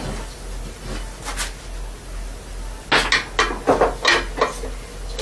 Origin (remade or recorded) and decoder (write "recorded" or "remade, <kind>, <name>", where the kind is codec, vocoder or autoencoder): recorded